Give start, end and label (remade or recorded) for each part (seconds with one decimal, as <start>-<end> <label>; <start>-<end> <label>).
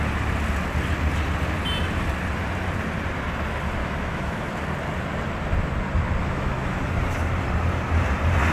0.0-3.8 recorded; 3.8-4.5 remade; 4.5-6.2 recorded; 6.2-6.8 remade; 6.8-8.5 recorded